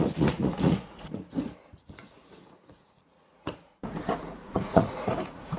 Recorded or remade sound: remade